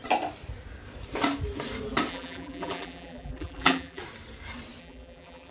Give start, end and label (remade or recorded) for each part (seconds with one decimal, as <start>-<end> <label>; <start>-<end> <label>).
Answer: 0.0-2.1 recorded; 2.1-4.0 remade; 4.0-4.8 recorded; 4.8-5.5 remade

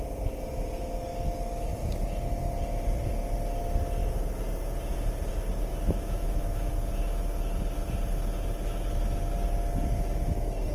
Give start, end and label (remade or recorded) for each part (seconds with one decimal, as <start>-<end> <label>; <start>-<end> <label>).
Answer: 0.0-5.7 recorded; 5.7-6.7 remade; 6.7-10.7 recorded

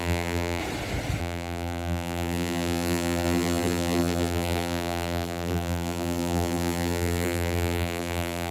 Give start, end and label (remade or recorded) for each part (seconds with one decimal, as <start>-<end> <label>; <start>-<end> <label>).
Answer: 0.0-0.6 remade; 0.6-1.2 recorded; 1.2-8.5 remade

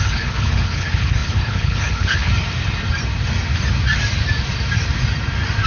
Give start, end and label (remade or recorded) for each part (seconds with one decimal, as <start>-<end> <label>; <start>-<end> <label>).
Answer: 0.0-2.3 remade; 2.3-5.7 recorded

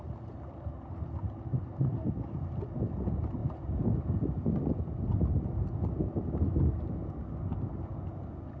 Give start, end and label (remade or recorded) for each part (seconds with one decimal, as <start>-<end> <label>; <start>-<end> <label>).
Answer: 0.0-8.6 recorded

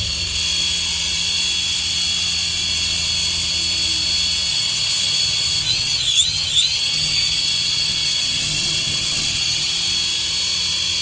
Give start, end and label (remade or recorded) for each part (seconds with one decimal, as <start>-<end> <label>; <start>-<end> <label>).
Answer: 0.0-4.5 recorded; 4.5-9.7 remade; 9.7-11.0 recorded

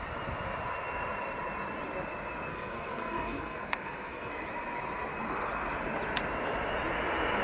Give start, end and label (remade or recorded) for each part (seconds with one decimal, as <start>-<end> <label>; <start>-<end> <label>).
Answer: 0.0-2.5 recorded; 2.5-4.3 remade; 4.3-7.4 recorded